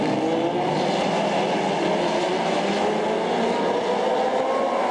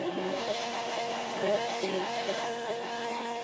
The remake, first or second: second